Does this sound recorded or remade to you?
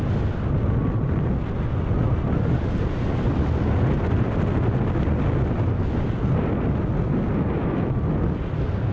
recorded